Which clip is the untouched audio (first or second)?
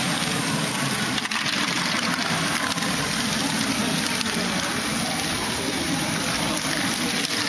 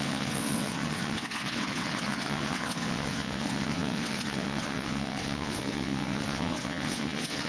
first